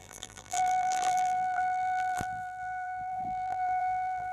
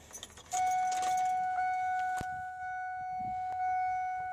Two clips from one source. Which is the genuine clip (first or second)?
second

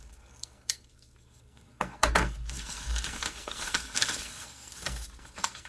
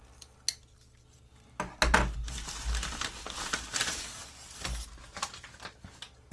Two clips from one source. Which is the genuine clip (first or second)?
second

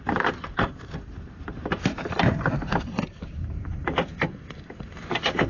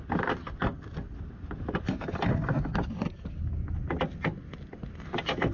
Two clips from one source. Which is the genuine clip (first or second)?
second